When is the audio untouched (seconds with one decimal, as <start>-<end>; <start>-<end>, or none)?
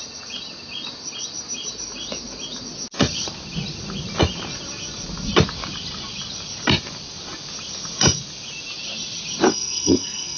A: 0.0-9.5